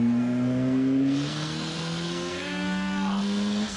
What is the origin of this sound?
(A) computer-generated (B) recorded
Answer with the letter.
A